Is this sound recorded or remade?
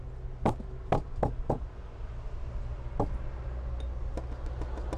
recorded